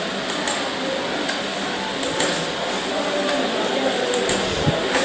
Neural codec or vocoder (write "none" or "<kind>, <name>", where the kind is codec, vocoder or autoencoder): none